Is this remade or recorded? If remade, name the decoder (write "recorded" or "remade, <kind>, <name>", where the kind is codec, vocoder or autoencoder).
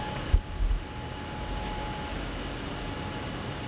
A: recorded